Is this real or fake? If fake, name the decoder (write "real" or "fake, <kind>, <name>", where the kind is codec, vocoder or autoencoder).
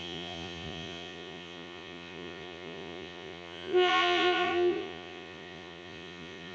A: fake, vocoder, Vocos